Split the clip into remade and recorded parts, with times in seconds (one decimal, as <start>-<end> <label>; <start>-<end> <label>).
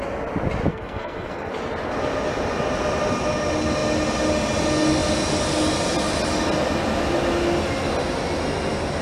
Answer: 0.0-0.7 recorded; 0.7-1.5 remade; 1.5-9.0 recorded